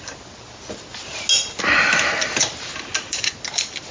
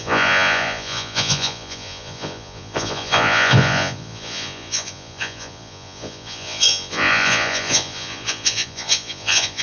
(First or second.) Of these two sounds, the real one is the first